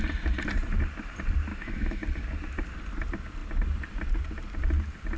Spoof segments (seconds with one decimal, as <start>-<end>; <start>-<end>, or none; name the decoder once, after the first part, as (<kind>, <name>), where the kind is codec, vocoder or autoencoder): 1.5-2.0 (autoencoder, DAC-VAE)